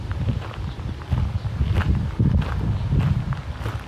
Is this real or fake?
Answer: real